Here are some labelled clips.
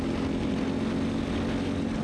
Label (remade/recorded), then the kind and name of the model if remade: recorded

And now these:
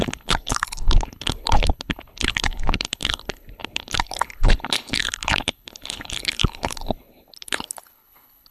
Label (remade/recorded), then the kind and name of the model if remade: remade, codec, HILCodec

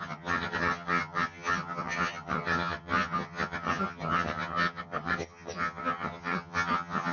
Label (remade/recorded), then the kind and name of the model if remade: remade, vocoder, HiFi-GAN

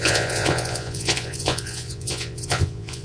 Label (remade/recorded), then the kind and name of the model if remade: remade, vocoder, Vocos